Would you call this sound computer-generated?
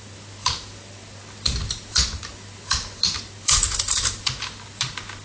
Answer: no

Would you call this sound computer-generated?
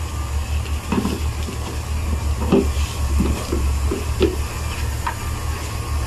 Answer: no